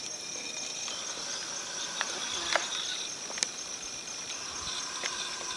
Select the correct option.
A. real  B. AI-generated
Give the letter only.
A